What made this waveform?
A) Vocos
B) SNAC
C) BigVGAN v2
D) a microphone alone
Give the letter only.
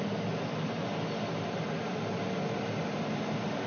D